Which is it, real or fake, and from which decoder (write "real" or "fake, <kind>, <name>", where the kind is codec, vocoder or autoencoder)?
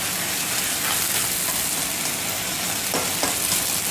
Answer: real